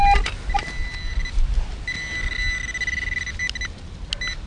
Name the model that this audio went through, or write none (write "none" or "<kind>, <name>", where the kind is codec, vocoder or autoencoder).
none